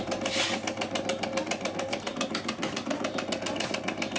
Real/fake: real